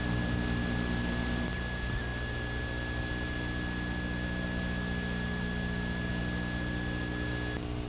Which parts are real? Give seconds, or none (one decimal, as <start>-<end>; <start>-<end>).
0.0-7.9